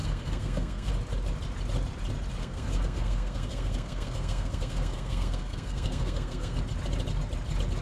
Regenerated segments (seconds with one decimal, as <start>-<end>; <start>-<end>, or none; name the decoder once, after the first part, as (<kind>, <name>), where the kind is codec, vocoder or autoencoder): 0.0-0.9 (codec, SNAC); 2.4-6.6